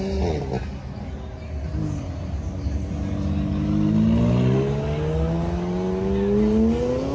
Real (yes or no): yes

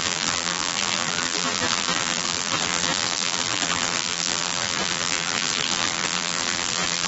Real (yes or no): no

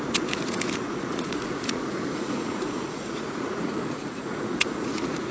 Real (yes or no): no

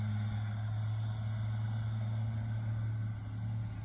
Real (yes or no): yes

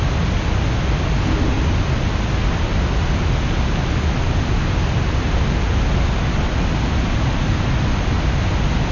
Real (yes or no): yes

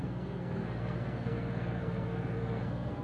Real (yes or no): no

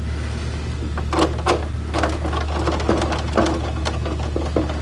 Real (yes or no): yes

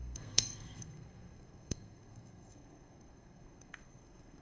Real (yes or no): no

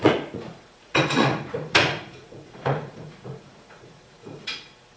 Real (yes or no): no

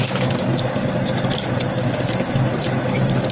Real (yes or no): yes